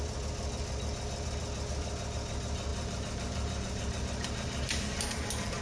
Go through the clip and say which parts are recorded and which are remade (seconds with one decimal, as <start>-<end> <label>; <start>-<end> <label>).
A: 0.0-2.7 recorded; 2.7-5.6 remade